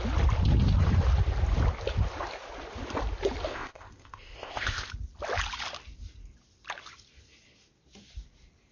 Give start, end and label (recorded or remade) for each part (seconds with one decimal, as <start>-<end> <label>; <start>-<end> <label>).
0.0-3.5 recorded; 3.5-4.9 remade; 4.9-8.7 recorded